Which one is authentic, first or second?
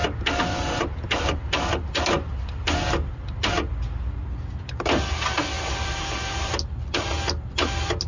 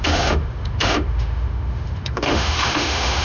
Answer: first